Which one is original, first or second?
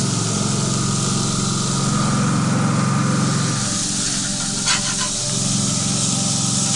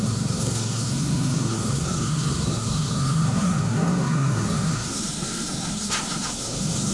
first